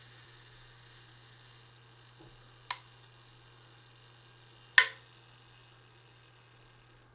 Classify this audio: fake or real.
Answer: real